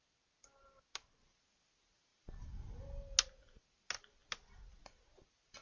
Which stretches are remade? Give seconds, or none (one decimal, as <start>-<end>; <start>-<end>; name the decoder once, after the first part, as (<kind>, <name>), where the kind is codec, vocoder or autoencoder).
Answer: none